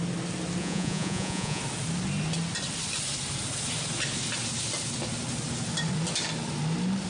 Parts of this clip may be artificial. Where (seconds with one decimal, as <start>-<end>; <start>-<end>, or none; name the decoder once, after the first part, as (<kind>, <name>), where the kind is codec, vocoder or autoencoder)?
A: 0.6-1.6 (vocoder, Vocos)